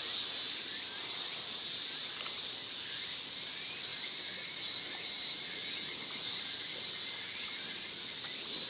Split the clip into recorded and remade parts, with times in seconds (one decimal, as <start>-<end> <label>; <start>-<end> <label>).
0.0-8.7 recorded